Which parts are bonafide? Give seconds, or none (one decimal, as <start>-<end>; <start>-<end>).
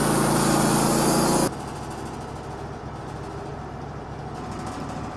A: 0.0-5.2